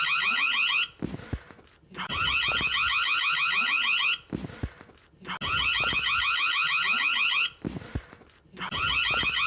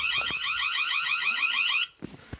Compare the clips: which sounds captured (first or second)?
first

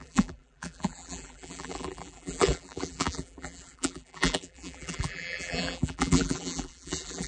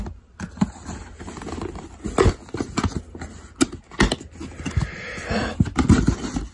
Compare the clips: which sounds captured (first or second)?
second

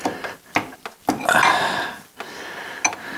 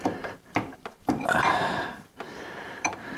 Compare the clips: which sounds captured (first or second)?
first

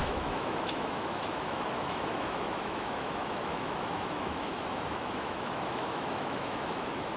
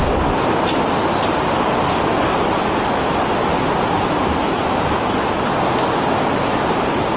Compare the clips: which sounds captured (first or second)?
second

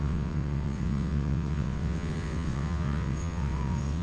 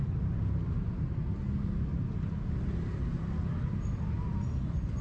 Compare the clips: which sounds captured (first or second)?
second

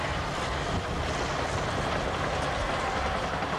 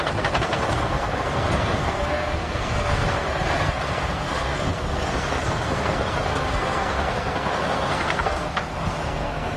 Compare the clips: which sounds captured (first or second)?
first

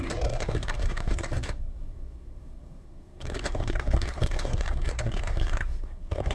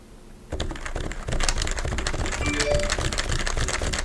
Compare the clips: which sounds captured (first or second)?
second